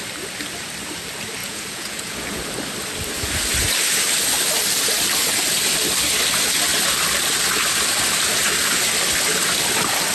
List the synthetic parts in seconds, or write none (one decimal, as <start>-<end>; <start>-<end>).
1.4-2.4